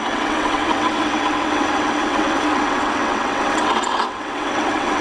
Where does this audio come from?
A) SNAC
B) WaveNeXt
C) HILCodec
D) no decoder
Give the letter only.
B